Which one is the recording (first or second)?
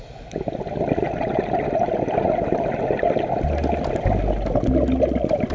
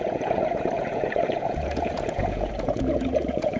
first